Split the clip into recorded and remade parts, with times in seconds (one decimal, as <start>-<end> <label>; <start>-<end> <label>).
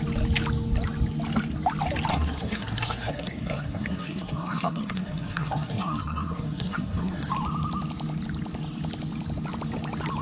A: 0.0-2.1 recorded; 2.1-7.3 remade; 7.3-10.2 recorded